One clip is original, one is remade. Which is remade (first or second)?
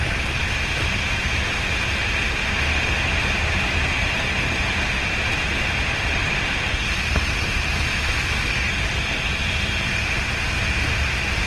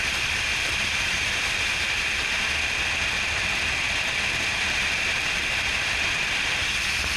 second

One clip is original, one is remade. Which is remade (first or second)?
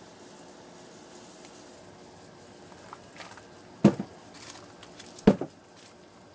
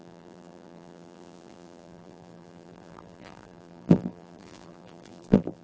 second